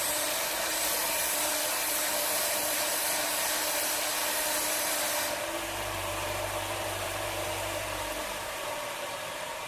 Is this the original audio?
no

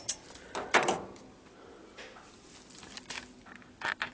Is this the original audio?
yes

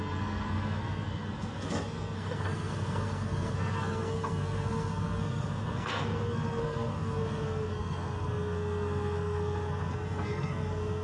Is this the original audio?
no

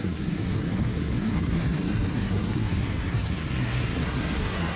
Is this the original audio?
no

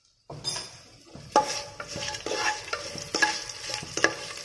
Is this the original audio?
yes